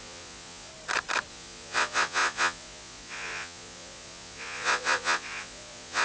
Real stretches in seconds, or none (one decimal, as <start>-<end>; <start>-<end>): 0.7-1.3